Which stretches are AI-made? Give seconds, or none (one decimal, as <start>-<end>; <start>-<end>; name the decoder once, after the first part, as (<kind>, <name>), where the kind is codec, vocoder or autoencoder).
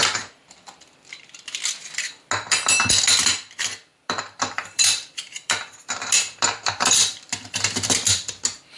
3.9-7.4 (vocoder, BigVGAN v2)